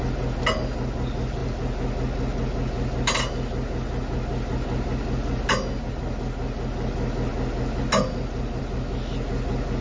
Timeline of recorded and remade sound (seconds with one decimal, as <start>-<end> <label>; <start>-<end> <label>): 0.0-9.8 recorded